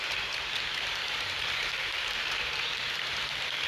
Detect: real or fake fake